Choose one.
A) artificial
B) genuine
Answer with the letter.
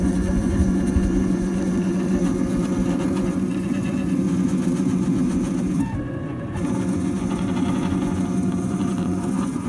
A